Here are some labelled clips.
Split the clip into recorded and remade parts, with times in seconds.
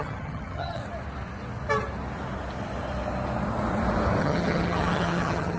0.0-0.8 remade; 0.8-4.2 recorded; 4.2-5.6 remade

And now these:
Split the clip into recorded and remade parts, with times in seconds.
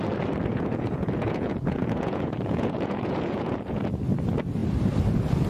0.0-0.5 recorded; 0.5-3.8 remade; 3.8-5.5 recorded